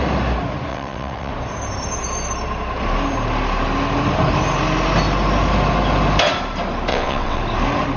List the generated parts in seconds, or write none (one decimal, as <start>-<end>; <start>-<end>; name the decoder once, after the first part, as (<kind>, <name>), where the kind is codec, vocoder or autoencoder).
0.7-1.3 (vocoder, WaveNeXt); 6.9-7.4